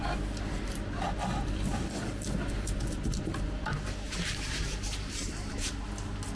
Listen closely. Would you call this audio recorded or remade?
recorded